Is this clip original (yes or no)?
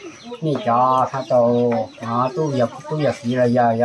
yes